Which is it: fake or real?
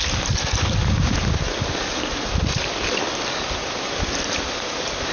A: real